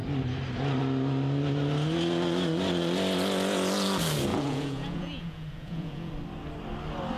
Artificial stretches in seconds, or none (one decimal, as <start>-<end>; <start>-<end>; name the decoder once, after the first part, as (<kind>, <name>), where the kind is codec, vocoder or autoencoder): 4.3-6.1 (vocoder, Vocos)

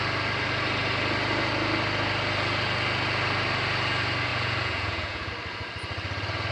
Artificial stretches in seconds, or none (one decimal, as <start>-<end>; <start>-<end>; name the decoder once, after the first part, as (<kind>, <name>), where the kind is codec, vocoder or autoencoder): 4.3-5.3 (vocoder, Vocos)

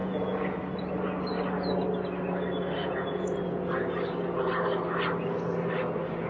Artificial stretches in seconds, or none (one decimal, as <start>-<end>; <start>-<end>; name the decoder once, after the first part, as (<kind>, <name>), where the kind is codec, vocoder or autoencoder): 0.0-0.6 (vocoder, Vocos); 2.8-3.7